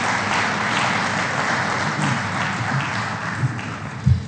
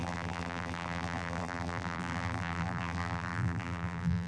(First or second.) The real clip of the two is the first